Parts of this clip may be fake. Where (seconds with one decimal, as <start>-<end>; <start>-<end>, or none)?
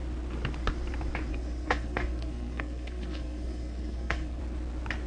1.3-4.4